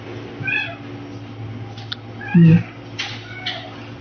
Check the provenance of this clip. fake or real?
real